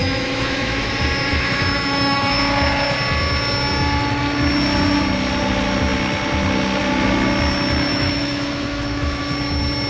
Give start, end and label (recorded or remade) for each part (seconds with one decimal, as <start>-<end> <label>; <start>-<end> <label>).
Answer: 0.0-0.9 remade; 0.9-1.3 recorded; 1.3-2.3 remade; 2.3-7.9 recorded; 7.9-9.2 remade; 9.2-9.9 recorded